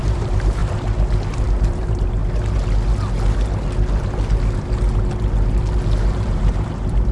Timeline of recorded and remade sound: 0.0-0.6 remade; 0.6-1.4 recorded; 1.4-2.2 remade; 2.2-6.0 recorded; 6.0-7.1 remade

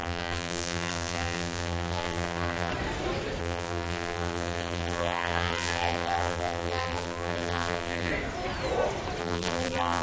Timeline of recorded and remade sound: 0.0-2.7 remade; 2.7-3.4 recorded; 3.4-8.1 remade; 8.1-9.2 recorded; 9.2-10.0 remade